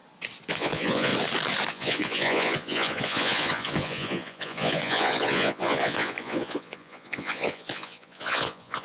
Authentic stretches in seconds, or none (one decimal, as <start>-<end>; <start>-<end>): 0.0-0.5; 1.1-1.7